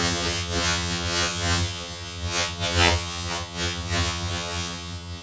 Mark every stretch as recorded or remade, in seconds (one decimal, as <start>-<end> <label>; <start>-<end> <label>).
0.0-5.2 remade